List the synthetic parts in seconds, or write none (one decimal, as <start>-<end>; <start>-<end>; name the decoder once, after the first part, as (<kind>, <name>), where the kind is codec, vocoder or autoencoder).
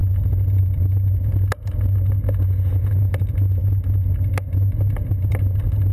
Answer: none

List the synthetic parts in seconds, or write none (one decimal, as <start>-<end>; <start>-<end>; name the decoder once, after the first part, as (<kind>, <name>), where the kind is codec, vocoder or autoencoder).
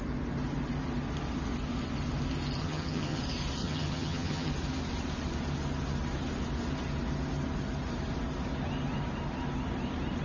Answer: 2.6-3.2 (vocoder, HiFi-GAN); 3.6-4.5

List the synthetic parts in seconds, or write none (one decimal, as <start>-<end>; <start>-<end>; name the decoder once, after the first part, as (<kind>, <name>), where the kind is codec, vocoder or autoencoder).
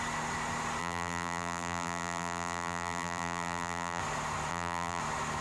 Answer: 0.8-4.0 (vocoder, BigVGAN v2); 4.5-5.0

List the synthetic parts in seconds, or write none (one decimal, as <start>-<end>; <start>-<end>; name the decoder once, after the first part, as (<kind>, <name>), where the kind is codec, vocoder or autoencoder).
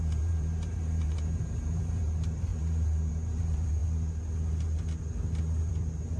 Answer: 0.0-3.8 (vocoder, BigVGAN v2); 5.7-6.2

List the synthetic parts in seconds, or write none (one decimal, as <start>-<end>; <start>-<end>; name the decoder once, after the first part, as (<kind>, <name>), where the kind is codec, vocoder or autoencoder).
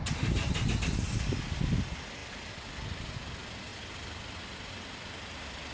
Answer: none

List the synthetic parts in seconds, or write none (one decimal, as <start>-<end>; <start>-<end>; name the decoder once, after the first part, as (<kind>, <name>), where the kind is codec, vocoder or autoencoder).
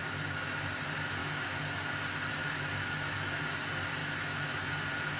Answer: 1.2-1.9 (autoencoder, DAC-VAE); 2.3-3.4; 4.0-4.7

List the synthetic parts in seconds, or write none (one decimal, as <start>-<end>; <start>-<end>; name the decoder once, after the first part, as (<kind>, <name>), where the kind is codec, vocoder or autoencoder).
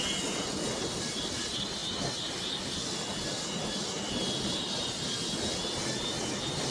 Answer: none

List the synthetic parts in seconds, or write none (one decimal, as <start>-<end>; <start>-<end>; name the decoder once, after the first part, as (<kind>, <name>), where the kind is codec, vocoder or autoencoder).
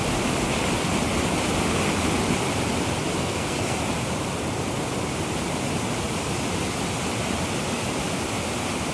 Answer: 3.2-3.8 (codec, SNAC)